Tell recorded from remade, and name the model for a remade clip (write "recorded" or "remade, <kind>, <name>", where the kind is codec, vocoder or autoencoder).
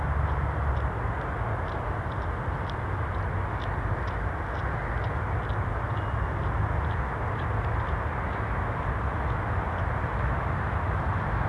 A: recorded